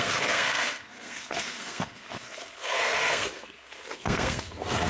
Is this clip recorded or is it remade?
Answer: remade